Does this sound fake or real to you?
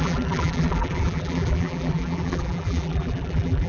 fake